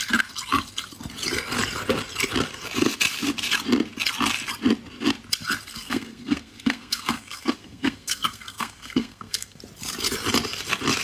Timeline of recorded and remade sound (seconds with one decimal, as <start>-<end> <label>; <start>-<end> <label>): 0.0-5.7 recorded; 5.7-9.6 remade; 9.6-11.0 recorded